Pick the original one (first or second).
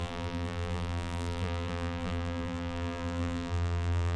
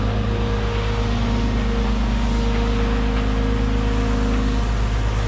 second